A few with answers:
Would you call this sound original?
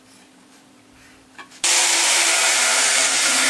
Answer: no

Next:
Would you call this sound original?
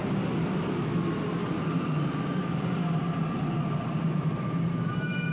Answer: yes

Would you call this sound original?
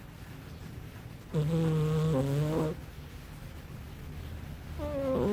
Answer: yes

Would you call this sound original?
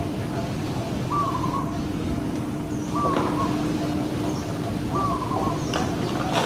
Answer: yes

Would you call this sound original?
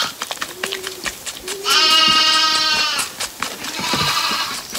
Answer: yes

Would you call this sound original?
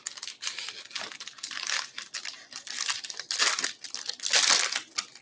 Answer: yes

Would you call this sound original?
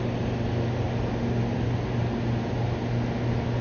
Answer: yes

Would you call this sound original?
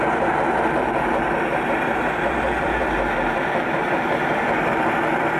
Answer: no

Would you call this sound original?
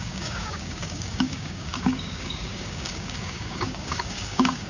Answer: no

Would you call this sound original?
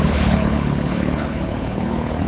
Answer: no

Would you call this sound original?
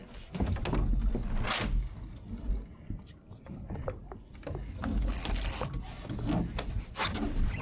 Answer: yes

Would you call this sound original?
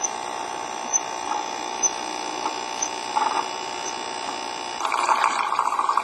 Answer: yes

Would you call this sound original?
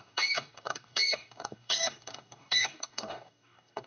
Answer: no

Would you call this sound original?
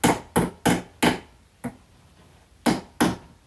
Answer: yes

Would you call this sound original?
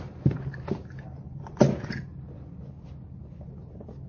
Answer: yes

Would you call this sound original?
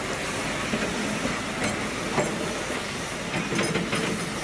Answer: yes